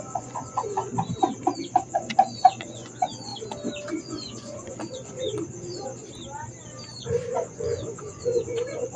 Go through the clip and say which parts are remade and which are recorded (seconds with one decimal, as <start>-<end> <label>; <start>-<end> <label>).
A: 0.0-0.9 remade; 0.9-1.6 recorded; 1.6-3.3 remade; 3.3-3.9 recorded; 3.9-6.0 remade; 6.0-6.9 recorded; 6.9-9.0 remade